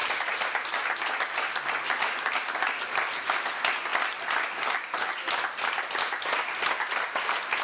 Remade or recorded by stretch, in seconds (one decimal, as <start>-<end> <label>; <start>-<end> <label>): 0.0-7.6 recorded